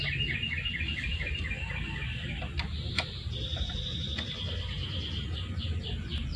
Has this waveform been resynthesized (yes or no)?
no